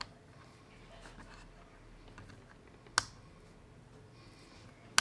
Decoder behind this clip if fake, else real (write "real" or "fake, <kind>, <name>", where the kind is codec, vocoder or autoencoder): real